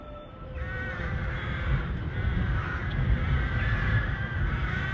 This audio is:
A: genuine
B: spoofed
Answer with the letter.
B